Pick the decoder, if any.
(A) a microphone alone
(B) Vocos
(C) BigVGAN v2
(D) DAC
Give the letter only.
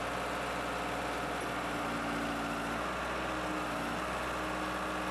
A